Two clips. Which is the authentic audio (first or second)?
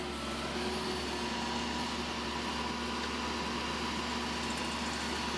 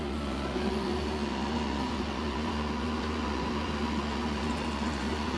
first